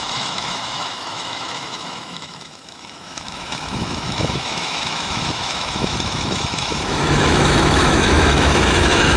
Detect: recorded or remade remade